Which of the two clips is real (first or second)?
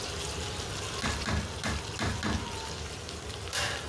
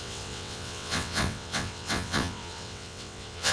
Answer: first